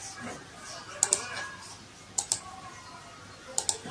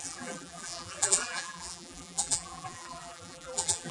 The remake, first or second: second